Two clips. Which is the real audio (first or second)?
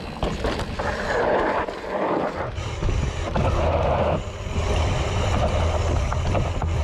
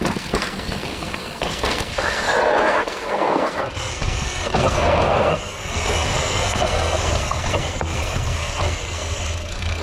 first